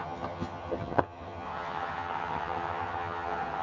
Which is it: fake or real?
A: fake